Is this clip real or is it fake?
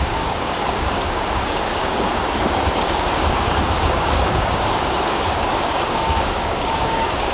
fake